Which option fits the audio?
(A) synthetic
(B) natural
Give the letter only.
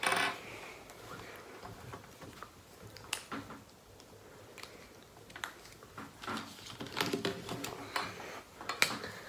B